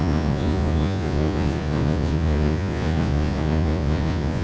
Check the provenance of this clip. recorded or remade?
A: remade